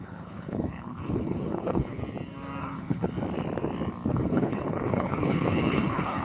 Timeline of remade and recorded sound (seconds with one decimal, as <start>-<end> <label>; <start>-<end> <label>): 0.0-2.0 remade; 2.0-2.6 recorded; 2.6-3.1 remade; 3.1-4.1 recorded; 4.1-6.2 remade